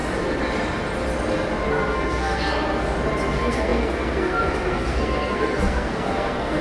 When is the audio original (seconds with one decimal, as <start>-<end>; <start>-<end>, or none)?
0.0-1.7; 2.5-3.3